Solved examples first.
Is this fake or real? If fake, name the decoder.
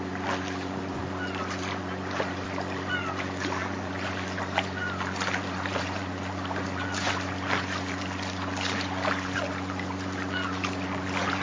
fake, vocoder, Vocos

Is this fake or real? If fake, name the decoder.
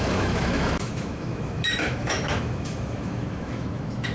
fake, autoencoder, DAC-VAE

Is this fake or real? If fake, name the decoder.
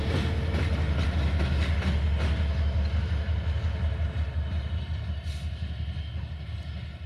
real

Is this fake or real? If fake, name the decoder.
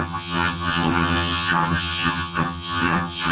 fake, vocoder, HiFi-GAN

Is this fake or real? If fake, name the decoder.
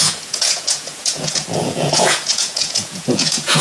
fake, vocoder, Vocos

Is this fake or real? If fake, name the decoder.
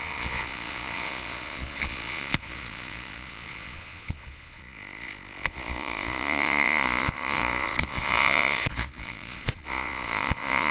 fake, vocoder, Vocos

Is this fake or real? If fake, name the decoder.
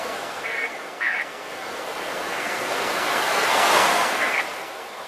fake, codec, SNAC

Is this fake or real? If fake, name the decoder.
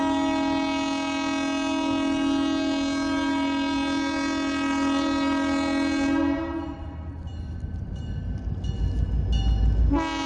real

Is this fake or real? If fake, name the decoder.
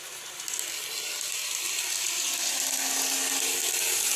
real